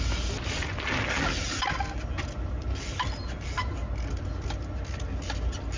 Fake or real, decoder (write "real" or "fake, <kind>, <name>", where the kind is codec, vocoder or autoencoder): real